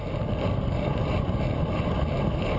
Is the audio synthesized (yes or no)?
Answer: no